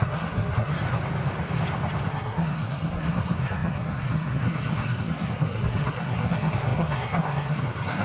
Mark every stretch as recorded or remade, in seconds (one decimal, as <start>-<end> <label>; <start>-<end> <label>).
0.0-0.7 remade; 0.7-2.1 recorded; 2.1-8.0 remade